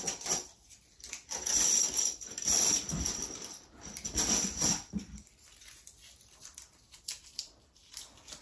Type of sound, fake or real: fake